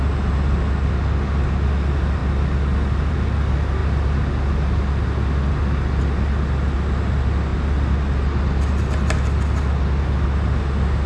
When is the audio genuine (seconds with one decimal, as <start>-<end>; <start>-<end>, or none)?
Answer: 0.0-11.1